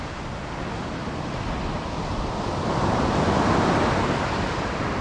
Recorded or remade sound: recorded